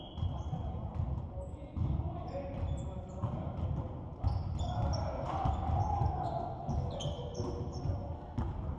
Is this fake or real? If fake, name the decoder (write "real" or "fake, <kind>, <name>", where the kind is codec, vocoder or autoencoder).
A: real